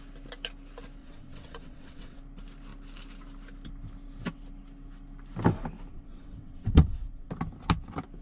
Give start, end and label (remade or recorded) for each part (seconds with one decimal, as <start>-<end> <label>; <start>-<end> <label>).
0.0-1.0 recorded; 1.0-2.2 remade; 2.2-5.9 recorded; 5.9-7.3 remade; 7.3-8.2 recorded